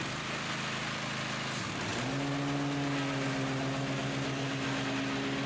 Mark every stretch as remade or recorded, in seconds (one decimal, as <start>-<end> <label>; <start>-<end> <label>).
0.0-5.5 recorded